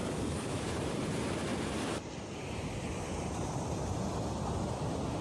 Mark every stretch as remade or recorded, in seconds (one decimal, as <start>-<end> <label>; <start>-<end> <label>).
0.0-0.7 remade; 0.7-5.2 recorded